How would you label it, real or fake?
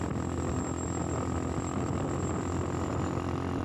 real